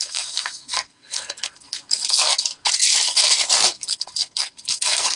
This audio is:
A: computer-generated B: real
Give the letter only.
A